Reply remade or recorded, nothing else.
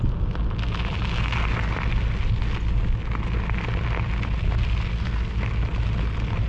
recorded